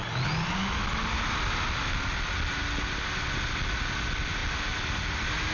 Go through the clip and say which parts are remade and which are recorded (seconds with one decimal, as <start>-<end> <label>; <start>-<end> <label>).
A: 0.0-5.5 recorded